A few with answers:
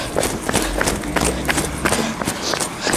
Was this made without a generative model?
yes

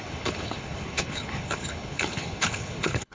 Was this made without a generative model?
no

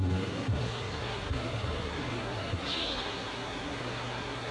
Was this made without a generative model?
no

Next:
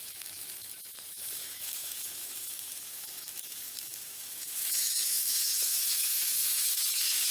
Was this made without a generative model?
no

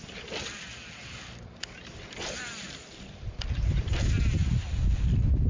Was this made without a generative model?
yes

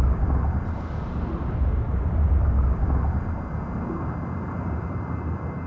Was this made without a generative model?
yes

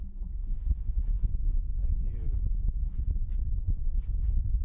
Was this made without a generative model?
yes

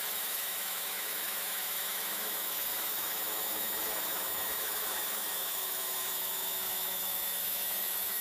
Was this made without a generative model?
no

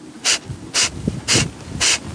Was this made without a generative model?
yes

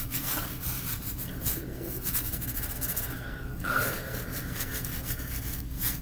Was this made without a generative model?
no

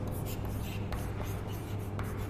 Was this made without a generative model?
yes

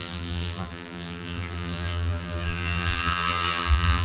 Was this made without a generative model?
no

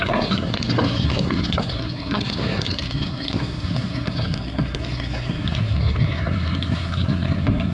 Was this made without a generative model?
no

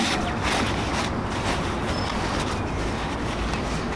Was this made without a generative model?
yes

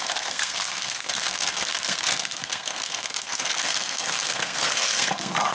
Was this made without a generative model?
no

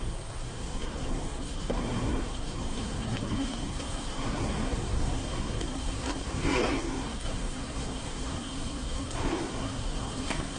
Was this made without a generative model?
no